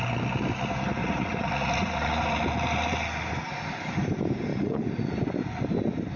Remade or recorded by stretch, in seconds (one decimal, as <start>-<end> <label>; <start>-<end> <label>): 0.0-1.0 recorded; 1.0-2.3 remade; 2.3-4.5 recorded; 4.5-5.1 remade; 5.1-6.2 recorded